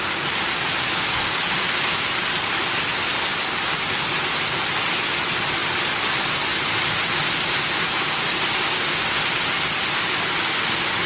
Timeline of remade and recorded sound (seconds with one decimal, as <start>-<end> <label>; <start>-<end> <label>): 0.0-11.1 recorded